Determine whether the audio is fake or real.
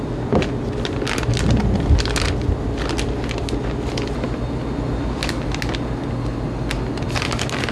real